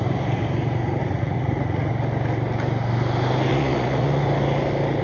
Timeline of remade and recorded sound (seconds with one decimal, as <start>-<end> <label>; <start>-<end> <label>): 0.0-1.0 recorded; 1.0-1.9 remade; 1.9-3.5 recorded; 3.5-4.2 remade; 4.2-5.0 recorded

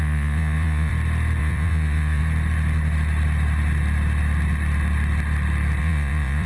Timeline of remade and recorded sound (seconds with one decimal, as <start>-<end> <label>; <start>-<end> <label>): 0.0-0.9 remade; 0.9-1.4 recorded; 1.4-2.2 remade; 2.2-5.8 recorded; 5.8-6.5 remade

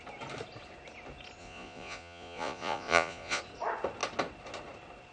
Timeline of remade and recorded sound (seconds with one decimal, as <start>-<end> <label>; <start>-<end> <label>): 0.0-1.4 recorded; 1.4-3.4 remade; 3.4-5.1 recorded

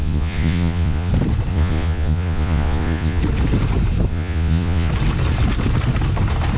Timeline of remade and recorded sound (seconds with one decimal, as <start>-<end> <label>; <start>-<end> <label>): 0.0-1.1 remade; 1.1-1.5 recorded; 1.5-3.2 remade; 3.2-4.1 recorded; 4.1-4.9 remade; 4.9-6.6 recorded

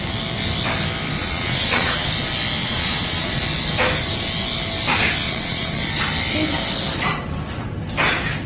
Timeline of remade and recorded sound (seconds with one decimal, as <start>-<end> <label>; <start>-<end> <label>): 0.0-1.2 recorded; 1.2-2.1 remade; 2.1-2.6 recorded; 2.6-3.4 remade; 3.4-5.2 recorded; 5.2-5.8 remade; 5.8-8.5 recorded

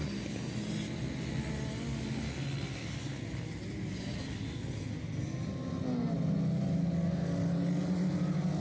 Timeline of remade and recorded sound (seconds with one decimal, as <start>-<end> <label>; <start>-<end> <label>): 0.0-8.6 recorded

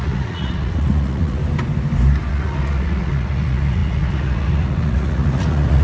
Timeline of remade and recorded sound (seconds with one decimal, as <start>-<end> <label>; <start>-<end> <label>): 0.0-1.4 remade; 1.4-2.3 recorded; 2.3-5.8 remade

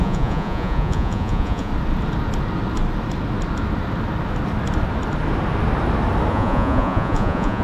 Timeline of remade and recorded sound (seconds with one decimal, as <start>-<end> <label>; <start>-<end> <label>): 0.0-1.7 remade; 1.7-6.3 recorded; 6.3-7.6 remade